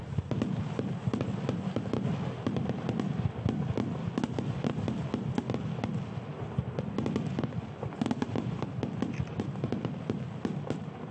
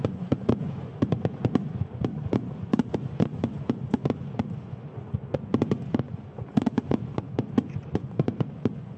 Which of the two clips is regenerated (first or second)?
second